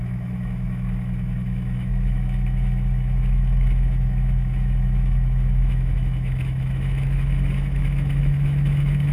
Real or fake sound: fake